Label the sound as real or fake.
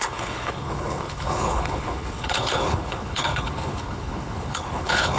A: fake